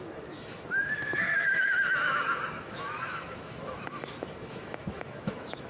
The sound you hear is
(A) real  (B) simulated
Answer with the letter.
B